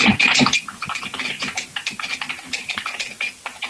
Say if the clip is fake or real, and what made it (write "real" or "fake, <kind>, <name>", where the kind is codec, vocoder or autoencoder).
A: real